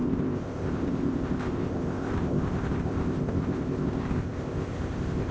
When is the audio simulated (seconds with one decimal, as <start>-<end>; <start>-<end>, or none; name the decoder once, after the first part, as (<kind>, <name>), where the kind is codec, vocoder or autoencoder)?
0.0-5.3 (codec, ZipCodec)